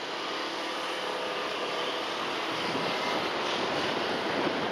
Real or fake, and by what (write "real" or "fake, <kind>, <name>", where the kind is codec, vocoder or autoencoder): real